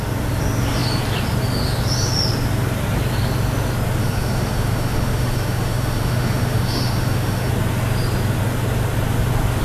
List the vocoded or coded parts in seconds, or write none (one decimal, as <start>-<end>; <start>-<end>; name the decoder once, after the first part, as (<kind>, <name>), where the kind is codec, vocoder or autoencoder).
4.0-7.5 (autoencoder, DAC-VAE)